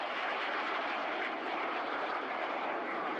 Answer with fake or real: fake